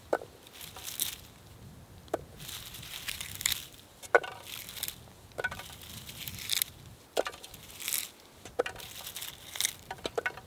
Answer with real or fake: real